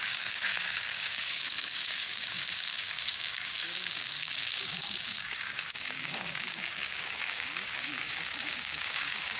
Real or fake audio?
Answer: fake